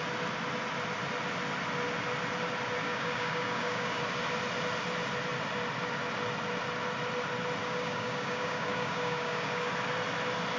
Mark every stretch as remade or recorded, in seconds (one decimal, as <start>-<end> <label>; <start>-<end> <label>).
0.0-2.8 recorded; 2.8-4.0 remade; 4.0-7.6 recorded; 7.6-9.7 remade; 9.7-10.6 recorded